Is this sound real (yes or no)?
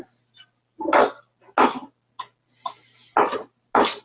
yes